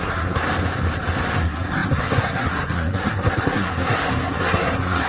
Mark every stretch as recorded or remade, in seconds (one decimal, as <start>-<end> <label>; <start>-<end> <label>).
0.0-0.4 remade; 0.4-1.4 recorded; 1.4-5.1 remade